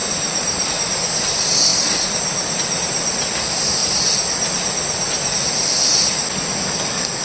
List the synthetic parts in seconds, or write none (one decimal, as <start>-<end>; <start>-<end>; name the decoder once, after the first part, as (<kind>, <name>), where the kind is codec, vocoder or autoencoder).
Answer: 0.0-0.7 (vocoder, BigVGAN v2); 1.7-2.5